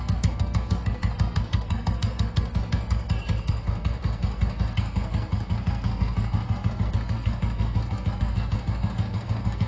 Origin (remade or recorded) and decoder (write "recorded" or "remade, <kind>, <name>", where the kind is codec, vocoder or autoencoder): remade, codec, SNAC